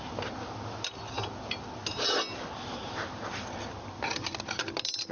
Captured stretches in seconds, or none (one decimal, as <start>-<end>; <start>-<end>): 0.0-5.1